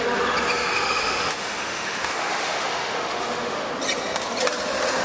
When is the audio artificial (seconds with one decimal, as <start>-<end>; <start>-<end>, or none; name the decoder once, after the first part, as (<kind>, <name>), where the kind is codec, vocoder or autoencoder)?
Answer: 0.7-3.7 (autoencoder, DAC-VAE)